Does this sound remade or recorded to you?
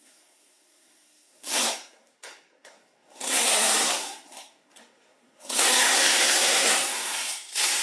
remade